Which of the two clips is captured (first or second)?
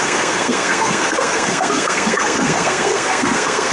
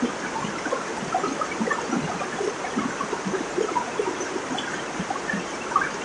second